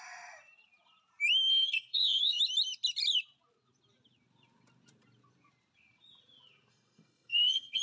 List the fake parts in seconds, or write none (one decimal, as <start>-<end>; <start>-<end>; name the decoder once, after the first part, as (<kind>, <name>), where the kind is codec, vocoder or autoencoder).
1.5-2.4 (codec, SNAC); 6.7-7.8